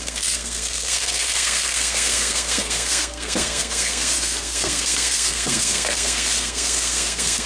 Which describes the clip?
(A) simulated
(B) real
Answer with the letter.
A